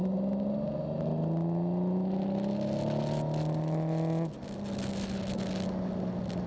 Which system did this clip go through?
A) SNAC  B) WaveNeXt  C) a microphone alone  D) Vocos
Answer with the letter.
C